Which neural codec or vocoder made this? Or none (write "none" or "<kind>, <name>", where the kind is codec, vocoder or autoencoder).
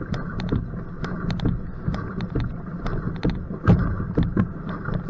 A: none